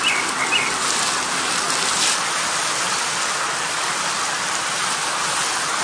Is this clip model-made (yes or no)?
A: no